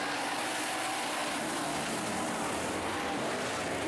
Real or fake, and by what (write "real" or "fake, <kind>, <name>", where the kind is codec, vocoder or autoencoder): real